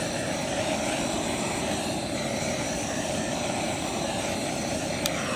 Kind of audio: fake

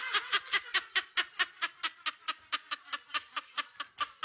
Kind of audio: real